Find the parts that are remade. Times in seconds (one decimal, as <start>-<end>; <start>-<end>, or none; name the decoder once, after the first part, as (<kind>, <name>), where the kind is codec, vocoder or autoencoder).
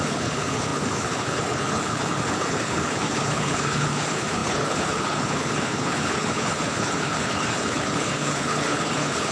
0.0-9.3 (codec, HILCodec)